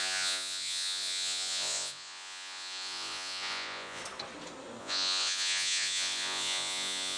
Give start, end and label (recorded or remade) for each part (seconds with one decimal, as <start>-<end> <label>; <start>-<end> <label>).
0.0-4.0 remade; 4.0-4.8 recorded; 4.8-7.2 remade